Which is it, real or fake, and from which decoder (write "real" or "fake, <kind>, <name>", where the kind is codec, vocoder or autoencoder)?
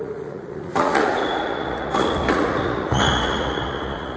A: fake, vocoder, Vocos